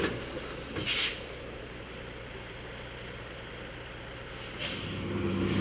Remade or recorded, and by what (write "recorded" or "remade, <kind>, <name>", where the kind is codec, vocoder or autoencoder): recorded